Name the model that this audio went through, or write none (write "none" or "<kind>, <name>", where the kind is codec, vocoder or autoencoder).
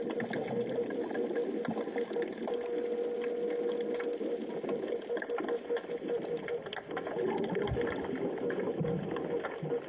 none